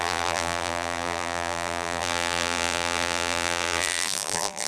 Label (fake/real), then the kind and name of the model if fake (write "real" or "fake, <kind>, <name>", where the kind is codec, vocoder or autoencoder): fake, vocoder, BigVGAN v2